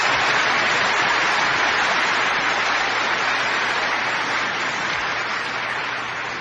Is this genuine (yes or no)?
yes